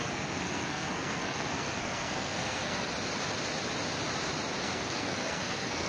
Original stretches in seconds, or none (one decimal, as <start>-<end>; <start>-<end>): 2.9-4.6